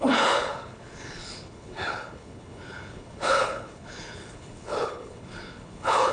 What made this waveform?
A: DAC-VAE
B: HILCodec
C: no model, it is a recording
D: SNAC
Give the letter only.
B